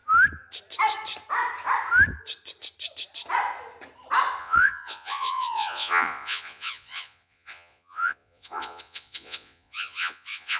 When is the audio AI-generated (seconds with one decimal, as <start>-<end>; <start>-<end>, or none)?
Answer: 4.4-10.6